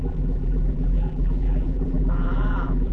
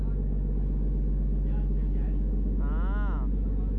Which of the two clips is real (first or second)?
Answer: second